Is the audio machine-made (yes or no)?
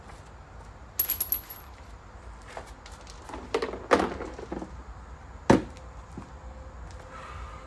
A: no